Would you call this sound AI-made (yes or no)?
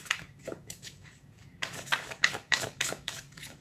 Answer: yes